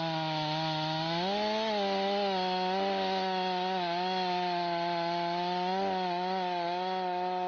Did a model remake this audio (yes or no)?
no